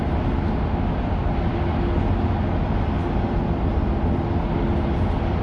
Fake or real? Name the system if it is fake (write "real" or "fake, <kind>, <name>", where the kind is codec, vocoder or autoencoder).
real